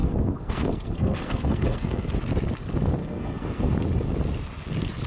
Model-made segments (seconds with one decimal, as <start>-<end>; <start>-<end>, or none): 0.0-2.1; 3.0-3.7